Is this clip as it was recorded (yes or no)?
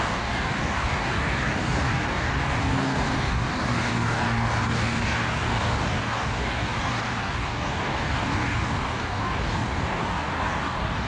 no